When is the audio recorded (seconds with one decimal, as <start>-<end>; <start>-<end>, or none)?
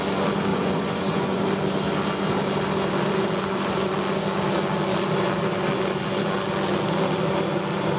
0.0-0.5; 1.4-8.0